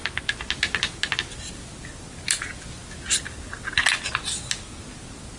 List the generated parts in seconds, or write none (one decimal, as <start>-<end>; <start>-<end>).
none